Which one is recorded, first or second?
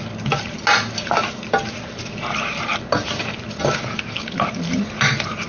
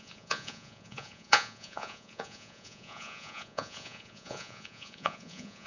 first